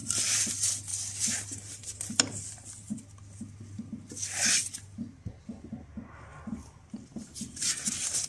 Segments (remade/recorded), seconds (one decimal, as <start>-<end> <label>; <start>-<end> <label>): 0.0-0.5 remade; 0.5-0.9 recorded; 0.9-3.6 remade; 3.6-6.3 recorded; 6.3-6.9 remade; 6.9-8.3 recorded